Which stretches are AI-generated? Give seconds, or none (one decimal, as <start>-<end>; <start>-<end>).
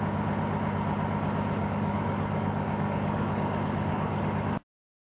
1.6-4.2